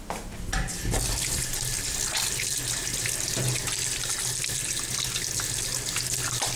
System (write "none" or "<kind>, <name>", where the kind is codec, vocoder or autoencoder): none